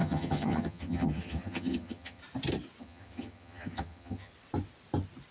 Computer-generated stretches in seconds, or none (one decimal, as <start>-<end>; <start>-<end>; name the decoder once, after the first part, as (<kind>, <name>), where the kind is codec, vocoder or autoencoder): 0.0-2.2 (vocoder, HiFi-GAN); 2.8-4.3